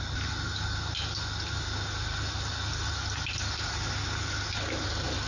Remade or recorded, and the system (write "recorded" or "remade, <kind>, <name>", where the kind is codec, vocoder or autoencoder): recorded